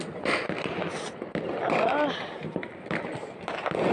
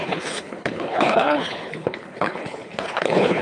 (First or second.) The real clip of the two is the first